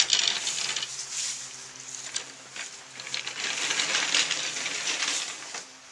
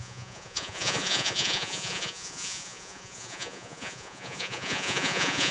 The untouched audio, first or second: first